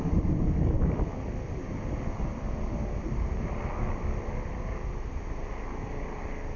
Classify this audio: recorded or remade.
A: recorded